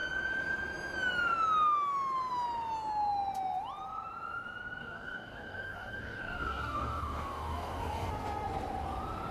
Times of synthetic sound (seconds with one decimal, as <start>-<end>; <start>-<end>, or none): 4.8-8.1